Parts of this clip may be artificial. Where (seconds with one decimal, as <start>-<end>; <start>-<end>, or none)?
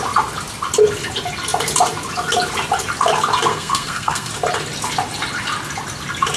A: 3.5-4.3